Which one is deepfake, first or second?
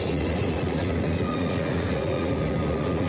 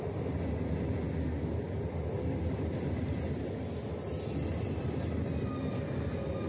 first